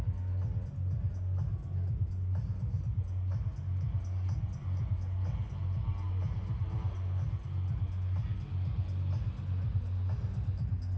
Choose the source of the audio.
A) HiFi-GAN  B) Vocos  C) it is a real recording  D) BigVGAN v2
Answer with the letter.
C